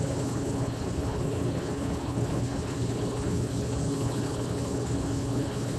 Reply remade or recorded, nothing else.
remade